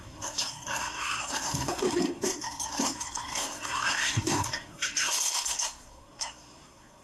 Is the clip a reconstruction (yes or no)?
yes